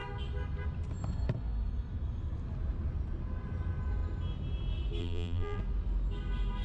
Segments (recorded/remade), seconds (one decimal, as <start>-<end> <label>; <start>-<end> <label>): 0.0-5.0 recorded; 5.0-5.6 remade; 5.6-6.6 recorded